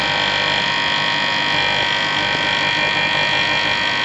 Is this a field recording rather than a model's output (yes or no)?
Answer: yes